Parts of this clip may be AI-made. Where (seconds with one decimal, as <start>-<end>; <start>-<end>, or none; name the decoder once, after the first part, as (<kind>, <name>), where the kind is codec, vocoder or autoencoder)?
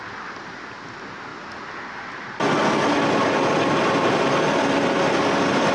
none